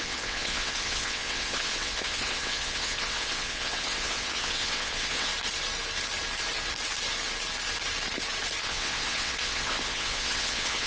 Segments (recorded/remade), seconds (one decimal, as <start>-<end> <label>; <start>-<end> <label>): 0.0-5.3 remade; 5.3-8.6 recorded; 8.6-10.9 remade